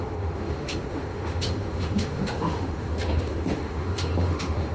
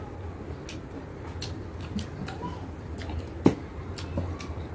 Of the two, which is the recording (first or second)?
second